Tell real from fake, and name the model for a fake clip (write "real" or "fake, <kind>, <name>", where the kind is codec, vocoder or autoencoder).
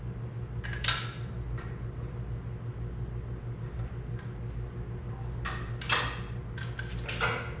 real